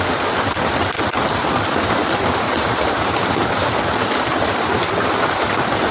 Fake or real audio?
real